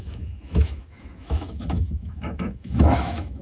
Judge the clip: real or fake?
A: fake